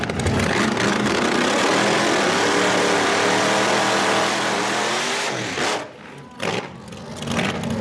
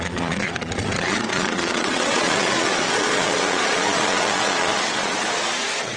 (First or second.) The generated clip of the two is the second